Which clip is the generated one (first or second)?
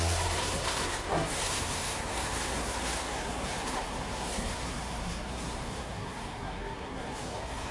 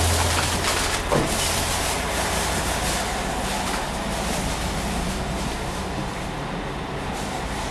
first